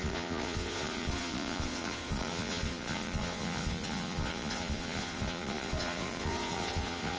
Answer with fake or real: fake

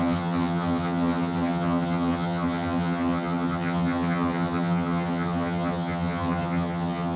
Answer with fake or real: fake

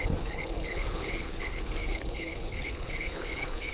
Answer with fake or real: fake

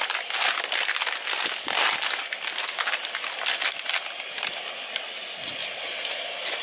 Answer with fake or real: real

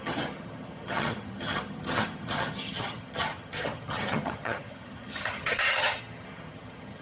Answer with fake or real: fake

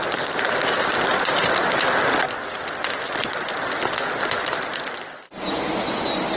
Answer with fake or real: real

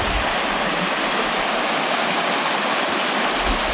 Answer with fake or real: real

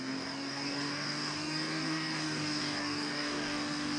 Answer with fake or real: fake